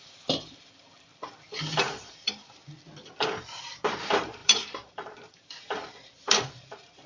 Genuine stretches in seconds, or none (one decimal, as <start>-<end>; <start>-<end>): 1.1-1.6; 2.6-3.4